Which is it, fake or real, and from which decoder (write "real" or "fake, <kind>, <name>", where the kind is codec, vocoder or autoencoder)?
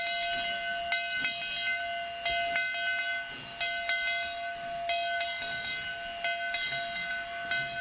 real